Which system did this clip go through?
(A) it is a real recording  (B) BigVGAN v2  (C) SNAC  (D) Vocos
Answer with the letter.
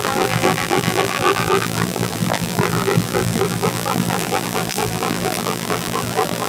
B